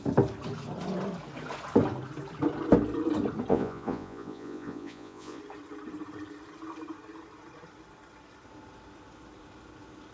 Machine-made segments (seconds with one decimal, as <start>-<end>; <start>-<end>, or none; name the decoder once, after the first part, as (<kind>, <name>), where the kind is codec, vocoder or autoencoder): 3.5-5.4 (vocoder, Vocos)